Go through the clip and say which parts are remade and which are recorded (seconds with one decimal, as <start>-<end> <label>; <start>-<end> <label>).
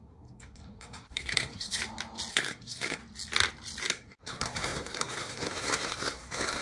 0.0-1.8 remade; 1.8-2.3 recorded; 2.3-3.0 remade; 3.0-3.9 recorded; 3.9-6.6 remade